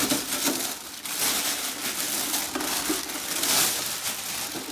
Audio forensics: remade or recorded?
recorded